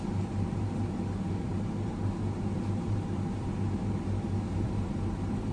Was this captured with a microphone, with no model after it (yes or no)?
no